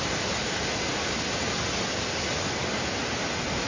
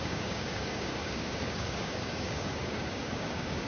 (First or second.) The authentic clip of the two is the first